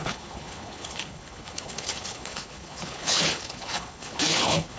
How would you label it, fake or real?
fake